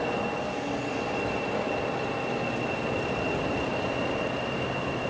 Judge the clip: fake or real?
real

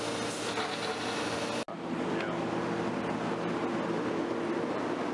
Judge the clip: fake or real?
real